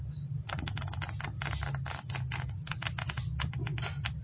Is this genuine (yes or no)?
yes